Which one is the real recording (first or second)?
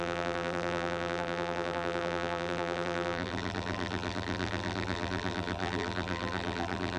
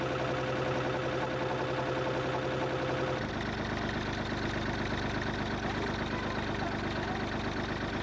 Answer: second